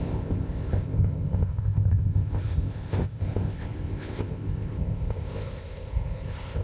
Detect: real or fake fake